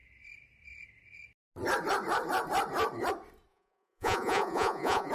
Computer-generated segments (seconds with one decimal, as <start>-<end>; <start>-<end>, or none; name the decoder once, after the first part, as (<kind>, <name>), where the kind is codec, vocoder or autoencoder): 3.5-5.1 (vocoder, Vocos)